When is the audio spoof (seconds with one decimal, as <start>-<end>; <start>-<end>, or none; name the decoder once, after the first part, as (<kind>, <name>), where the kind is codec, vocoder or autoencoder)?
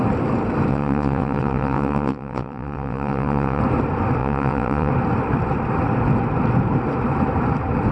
0.7-3.6 (vocoder, WaveNeXt); 4.2-4.9